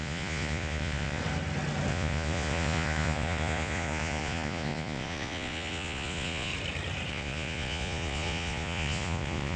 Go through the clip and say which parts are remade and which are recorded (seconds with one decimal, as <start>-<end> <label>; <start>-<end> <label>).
0.0-1.2 remade; 1.2-1.9 recorded; 1.9-6.5 remade; 6.5-7.1 recorded; 7.1-9.6 remade